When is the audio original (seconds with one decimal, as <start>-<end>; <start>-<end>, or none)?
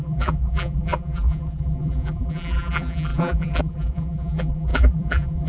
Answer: none